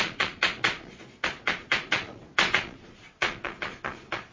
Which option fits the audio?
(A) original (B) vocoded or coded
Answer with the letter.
B